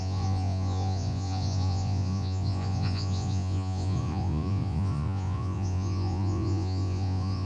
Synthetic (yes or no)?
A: yes